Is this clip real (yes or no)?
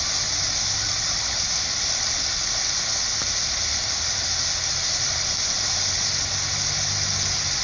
yes